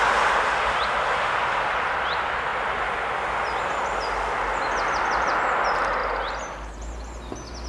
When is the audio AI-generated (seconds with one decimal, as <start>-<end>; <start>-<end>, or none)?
none